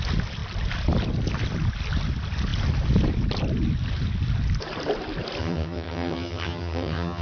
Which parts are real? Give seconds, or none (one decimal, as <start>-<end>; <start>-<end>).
0.0-5.4